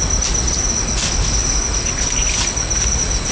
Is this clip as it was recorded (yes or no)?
yes